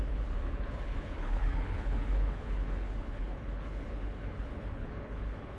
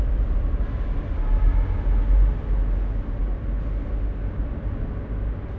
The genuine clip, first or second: second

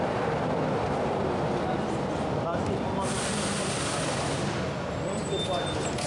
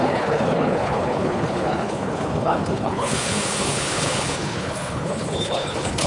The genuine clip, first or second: first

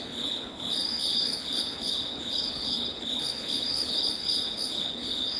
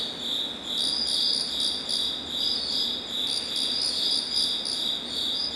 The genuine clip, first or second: second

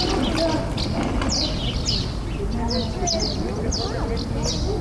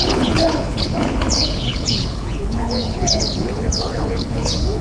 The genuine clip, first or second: first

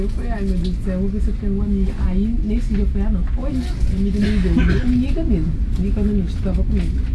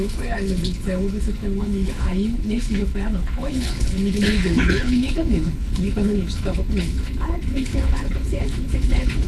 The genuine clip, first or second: first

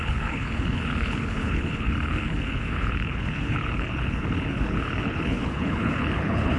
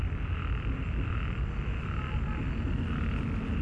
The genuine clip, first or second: second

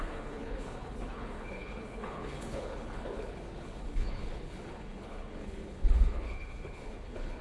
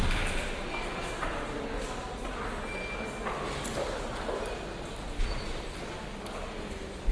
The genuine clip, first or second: second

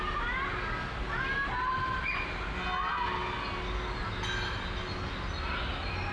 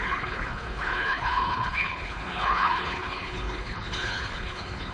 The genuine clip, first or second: first